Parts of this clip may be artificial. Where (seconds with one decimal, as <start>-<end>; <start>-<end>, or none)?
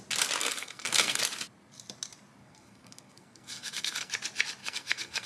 0.4-1.2; 2.4-4.1; 4.6-5.3